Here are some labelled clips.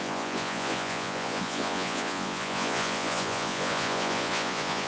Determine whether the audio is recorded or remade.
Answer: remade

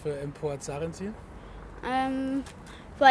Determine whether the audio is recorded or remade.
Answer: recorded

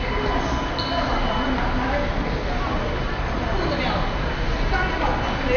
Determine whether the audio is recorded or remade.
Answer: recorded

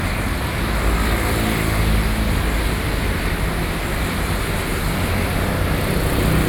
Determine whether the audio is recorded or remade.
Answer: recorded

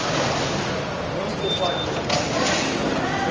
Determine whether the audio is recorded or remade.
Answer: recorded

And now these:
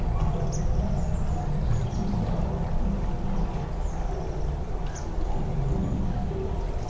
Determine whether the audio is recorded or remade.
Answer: recorded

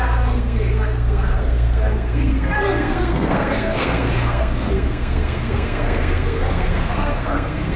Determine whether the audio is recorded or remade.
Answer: remade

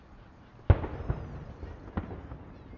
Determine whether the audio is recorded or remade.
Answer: recorded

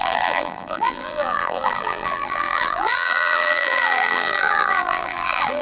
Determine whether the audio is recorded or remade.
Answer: remade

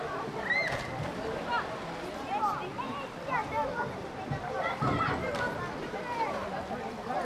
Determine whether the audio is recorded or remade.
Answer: recorded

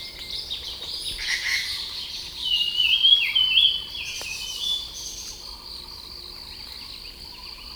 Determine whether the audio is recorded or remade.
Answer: recorded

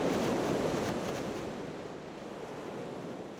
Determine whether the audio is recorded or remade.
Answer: recorded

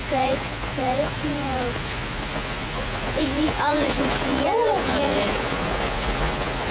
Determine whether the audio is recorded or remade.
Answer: remade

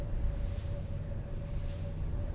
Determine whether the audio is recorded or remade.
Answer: remade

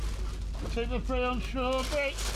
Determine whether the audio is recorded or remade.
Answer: recorded